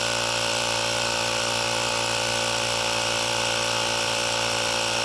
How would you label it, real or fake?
fake